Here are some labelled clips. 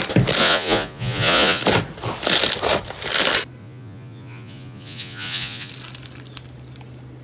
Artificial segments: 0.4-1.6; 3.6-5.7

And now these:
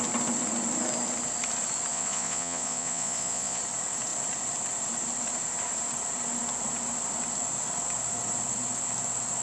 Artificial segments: 1.9-3.6